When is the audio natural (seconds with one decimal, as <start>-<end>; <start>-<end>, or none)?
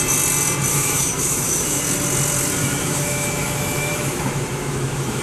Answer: 0.0-0.7; 1.8-2.6